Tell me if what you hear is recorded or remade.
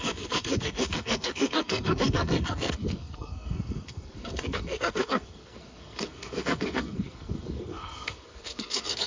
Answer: remade